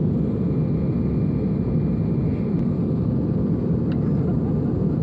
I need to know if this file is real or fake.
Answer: real